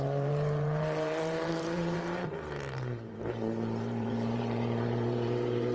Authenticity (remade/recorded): remade